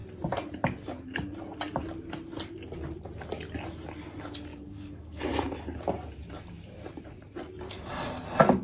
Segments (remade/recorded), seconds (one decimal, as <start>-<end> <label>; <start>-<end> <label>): 0.0-4.5 recorded; 4.5-5.2 remade; 5.2-8.6 recorded